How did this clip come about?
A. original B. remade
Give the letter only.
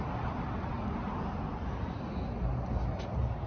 A